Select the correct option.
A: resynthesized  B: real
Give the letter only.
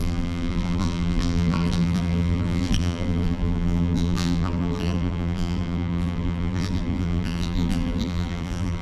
A